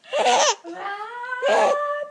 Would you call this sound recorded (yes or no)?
yes